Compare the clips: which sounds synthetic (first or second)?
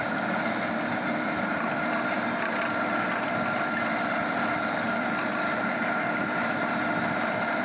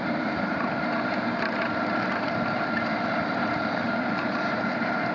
second